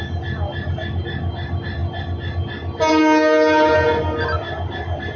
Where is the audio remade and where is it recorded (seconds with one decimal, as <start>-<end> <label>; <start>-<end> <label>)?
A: 0.0-5.2 recorded